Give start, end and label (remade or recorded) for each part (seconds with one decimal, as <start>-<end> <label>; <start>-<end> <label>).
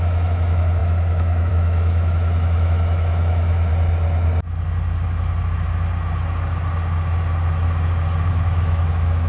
0.0-3.7 remade; 3.7-8.3 recorded; 8.3-9.3 remade